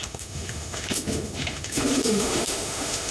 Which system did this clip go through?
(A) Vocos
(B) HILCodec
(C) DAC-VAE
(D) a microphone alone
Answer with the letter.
C